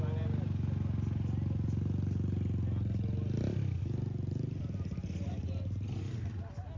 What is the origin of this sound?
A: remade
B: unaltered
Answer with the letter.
B